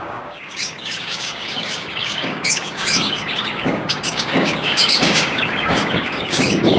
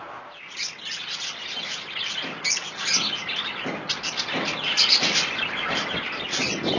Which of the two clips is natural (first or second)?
second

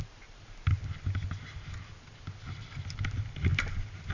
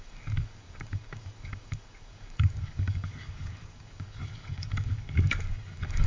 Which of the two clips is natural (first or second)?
first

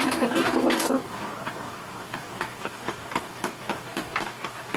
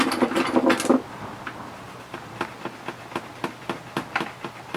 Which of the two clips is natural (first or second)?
second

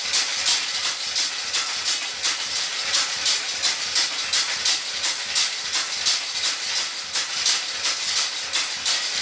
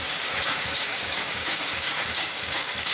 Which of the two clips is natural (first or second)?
first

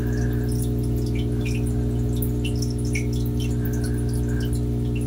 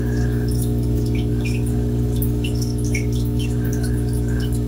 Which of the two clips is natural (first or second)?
first